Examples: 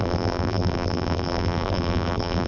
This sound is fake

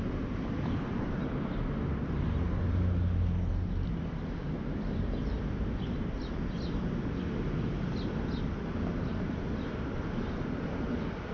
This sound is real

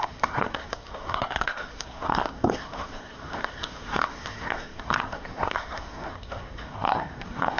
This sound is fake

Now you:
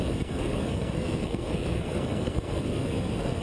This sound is fake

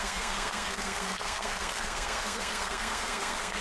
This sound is fake